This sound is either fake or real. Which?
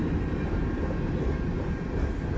real